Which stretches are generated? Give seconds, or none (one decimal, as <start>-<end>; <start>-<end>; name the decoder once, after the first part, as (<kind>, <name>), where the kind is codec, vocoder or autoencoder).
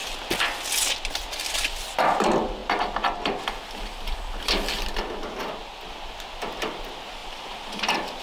7.2-8.2 (vocoder, BigVGAN v2)